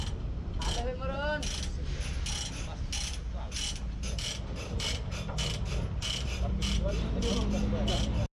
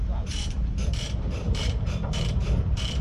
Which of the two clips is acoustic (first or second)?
first